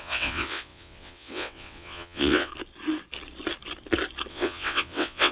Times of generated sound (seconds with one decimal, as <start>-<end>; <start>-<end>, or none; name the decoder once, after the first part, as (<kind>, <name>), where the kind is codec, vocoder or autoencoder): 0.0-2.5 (vocoder, WaveNeXt); 4.3-5.3